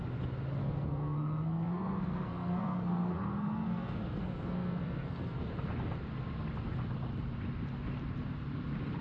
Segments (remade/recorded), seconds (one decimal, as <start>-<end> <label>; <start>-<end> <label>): 0.0-0.6 recorded; 0.6-5.5 remade; 5.5-9.0 recorded